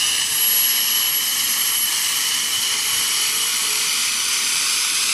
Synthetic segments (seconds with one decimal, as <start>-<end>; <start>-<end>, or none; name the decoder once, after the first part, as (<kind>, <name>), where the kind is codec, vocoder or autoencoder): 1.3-4.4 (vocoder, BigVGAN v2)